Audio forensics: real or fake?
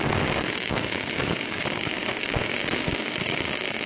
fake